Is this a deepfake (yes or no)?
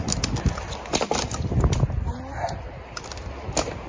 no